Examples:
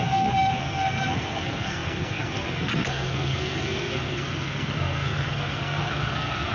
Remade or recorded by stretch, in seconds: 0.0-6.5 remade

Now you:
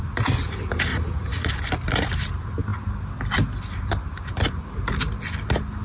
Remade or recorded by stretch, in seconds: 0.0-0.9 recorded; 0.9-1.5 remade; 1.5-5.8 recorded

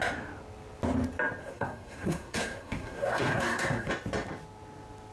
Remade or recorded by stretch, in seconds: 0.0-1.4 recorded; 1.4-3.9 remade; 3.9-5.1 recorded